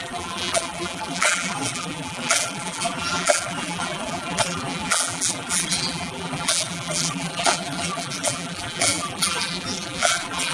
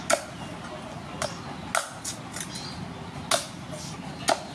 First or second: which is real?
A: second